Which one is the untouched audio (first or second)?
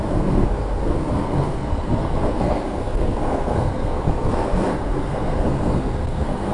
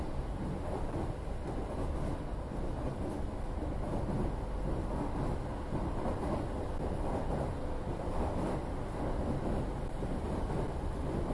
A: second